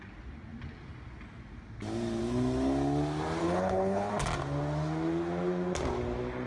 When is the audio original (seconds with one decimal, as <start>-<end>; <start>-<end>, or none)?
0.0-3.4; 4.1-6.5